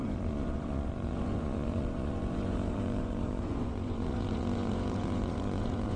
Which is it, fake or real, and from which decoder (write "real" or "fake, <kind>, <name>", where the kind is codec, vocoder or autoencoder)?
fake, vocoder, Vocos